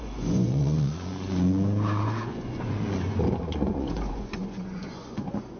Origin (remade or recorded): remade